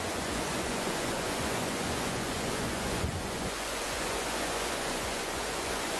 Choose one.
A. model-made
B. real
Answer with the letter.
A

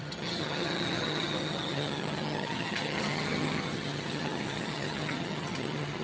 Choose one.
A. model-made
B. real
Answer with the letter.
A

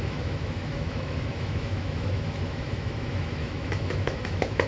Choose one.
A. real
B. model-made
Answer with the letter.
B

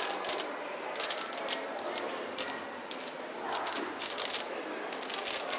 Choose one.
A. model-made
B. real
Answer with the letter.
B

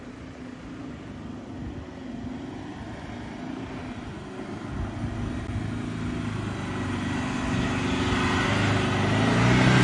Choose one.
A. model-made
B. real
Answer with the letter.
B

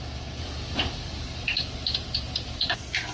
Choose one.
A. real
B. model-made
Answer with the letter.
A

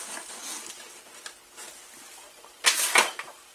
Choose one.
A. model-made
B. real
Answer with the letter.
B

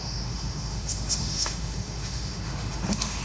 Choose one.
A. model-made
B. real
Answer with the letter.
A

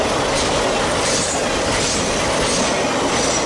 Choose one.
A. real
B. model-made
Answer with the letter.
A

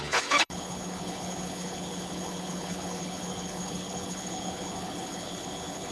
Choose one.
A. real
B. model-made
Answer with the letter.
B